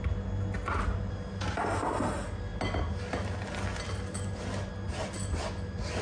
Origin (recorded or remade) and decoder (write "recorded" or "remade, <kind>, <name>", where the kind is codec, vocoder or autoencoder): recorded